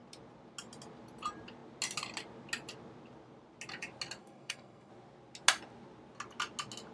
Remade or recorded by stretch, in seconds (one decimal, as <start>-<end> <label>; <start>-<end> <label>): 0.0-4.2 recorded; 4.2-4.9 remade; 4.9-6.9 recorded